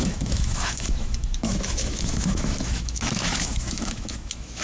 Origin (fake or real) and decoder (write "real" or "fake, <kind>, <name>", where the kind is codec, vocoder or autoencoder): fake, autoencoder, DAC-VAE